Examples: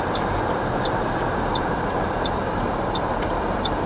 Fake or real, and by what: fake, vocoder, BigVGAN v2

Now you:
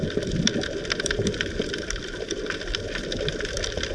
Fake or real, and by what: fake, vocoder, BigVGAN v2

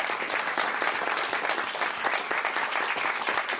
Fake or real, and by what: real